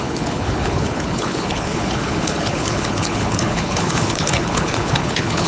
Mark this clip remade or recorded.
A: remade